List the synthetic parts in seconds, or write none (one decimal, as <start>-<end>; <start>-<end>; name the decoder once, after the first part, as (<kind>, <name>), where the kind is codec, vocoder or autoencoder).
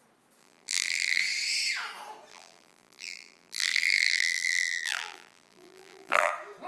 0.4-1.2 (vocoder, BigVGAN v2); 2.3-6.3